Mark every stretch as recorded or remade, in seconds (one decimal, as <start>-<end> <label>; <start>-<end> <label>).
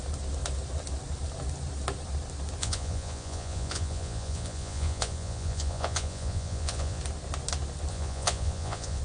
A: 0.0-2.6 recorded; 2.6-7.0 remade; 7.0-7.9 recorded; 7.9-9.0 remade